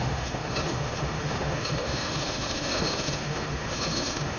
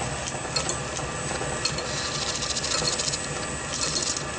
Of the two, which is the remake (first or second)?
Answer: first